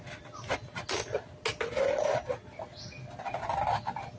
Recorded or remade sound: recorded